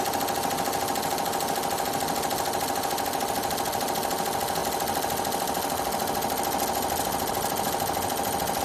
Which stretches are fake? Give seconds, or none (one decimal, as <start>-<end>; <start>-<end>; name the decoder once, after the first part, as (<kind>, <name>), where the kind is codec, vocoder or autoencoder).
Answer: none